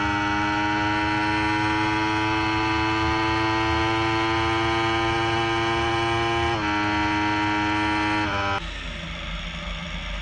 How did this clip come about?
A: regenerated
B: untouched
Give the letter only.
B